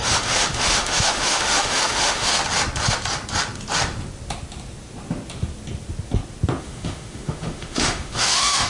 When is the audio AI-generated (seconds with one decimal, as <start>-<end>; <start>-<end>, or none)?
0.0-2.3; 6.6-8.7